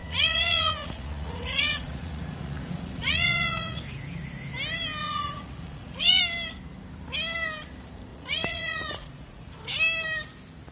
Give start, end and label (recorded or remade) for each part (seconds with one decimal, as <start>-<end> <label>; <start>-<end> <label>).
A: 0.0-3.8 remade; 3.8-5.0 recorded; 5.0-6.2 remade; 6.2-8.1 recorded; 8.1-9.6 remade; 9.6-10.7 recorded